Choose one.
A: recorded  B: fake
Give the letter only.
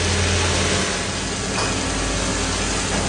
A